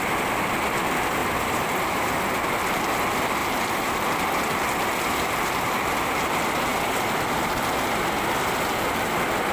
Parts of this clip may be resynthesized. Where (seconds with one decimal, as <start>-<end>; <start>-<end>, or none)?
1.2-2.1